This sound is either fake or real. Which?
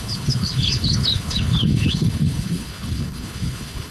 fake